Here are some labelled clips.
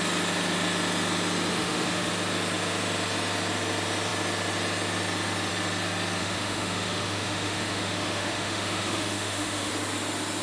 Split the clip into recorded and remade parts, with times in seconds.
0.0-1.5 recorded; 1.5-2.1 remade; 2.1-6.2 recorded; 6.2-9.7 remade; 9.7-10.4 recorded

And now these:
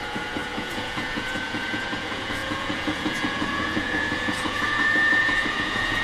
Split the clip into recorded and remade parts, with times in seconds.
0.0-6.0 remade

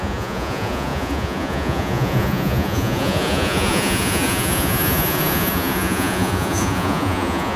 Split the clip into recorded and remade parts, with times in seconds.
0.0-7.6 remade

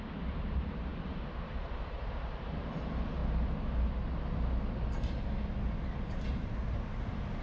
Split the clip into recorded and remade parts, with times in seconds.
0.0-3.2 remade; 3.2-6.3 recorded; 6.3-7.4 remade

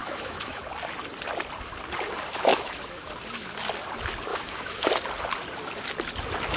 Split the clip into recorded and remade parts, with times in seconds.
0.0-0.6 remade; 0.6-2.5 recorded; 2.5-3.1 remade; 3.1-4.3 recorded; 4.3-4.9 remade; 4.9-6.6 recorded

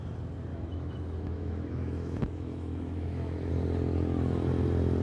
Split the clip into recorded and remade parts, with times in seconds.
0.0-0.5 recorded; 0.5-3.5 remade; 3.5-5.0 recorded